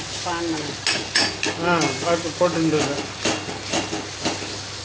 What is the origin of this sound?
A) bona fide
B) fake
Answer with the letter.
A